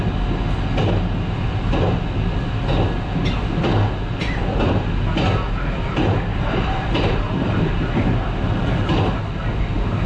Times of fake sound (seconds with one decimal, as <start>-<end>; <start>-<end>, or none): 6.3-7.7